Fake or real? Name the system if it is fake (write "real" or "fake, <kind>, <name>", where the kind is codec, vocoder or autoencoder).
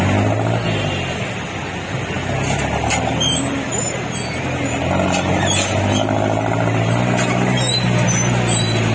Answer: real